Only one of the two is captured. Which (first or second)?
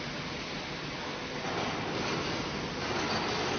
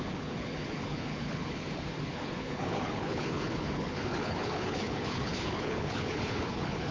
first